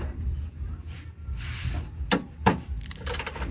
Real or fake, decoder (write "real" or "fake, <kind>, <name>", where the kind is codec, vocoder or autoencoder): real